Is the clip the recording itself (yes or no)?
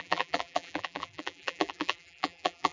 no